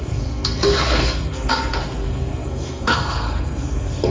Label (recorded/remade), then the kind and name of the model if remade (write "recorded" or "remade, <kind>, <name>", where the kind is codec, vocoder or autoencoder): remade, codec, SNAC